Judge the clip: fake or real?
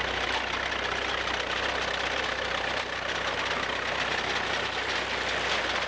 real